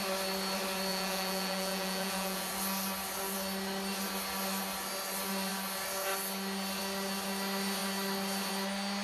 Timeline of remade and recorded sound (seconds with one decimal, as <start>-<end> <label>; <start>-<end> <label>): 0.0-0.9 recorded; 0.9-2.5 remade; 2.5-9.0 recorded